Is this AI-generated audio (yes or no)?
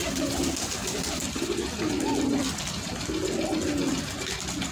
no